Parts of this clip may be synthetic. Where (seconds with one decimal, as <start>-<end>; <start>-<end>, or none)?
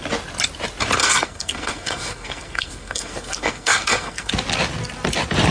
1.0-4.3